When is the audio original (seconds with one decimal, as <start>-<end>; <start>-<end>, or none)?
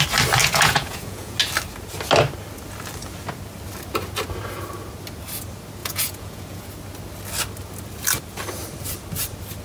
0.0-0.4; 1.4-5.8; 6.7-9.6